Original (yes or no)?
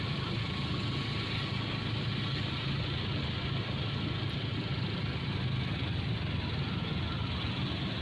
yes